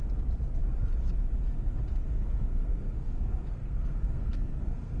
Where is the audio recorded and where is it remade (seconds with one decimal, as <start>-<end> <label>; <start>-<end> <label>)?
0.0-1.9 recorded; 1.9-5.0 remade